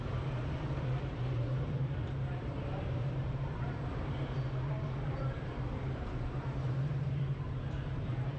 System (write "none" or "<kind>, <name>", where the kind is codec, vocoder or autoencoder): vocoder, BigVGAN v2